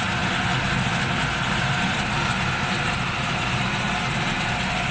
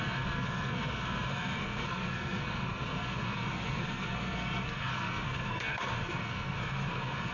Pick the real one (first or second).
first